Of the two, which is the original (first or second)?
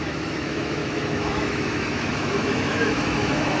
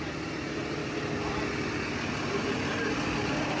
second